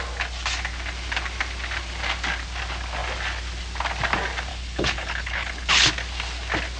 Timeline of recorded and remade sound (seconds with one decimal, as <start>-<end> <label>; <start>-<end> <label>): 0.0-4.5 recorded; 4.5-5.9 remade; 5.9-6.8 recorded